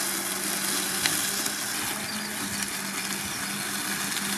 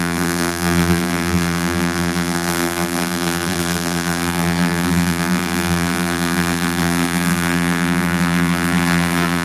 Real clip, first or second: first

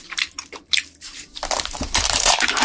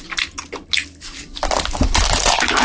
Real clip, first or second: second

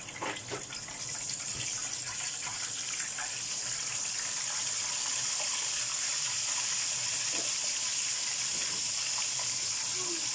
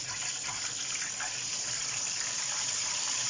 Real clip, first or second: first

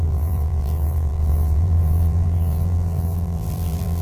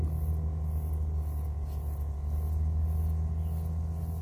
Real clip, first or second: second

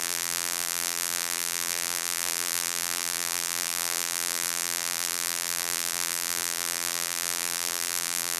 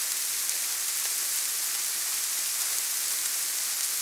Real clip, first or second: second